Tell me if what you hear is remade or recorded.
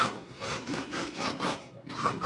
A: remade